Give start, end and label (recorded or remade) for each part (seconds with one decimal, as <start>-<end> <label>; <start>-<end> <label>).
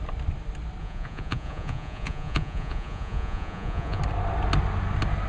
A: 0.0-0.8 recorded; 0.8-4.0 remade; 4.0-5.3 recorded